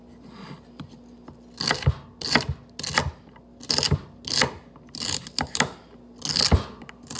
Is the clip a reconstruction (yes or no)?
no